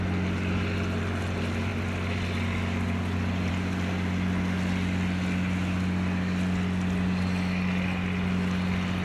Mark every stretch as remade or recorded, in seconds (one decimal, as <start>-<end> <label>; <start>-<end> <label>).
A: 0.0-9.0 recorded